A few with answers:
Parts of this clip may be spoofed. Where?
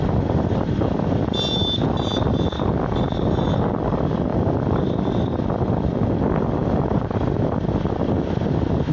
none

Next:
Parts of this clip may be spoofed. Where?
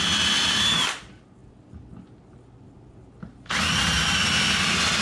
none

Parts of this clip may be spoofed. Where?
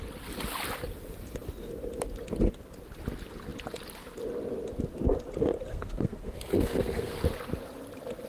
5.7-7.2 (codec, SNAC)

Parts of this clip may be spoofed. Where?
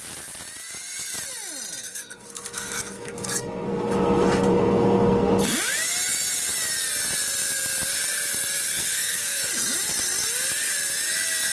1.8-5.3 (codec, SNAC); 8.7-9.5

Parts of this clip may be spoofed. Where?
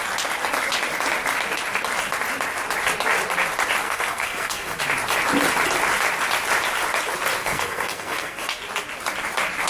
3.8-4.8 (codec, SNAC); 7.4-8.6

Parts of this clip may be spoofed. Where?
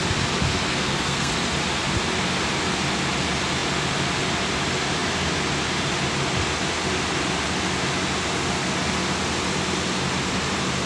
0.7-1.3 (codec, SNAC)